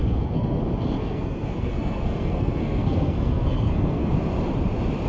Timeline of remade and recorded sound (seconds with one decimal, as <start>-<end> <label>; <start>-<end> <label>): 0.0-0.6 remade; 0.6-1.0 recorded; 1.0-4.1 remade; 4.1-5.1 recorded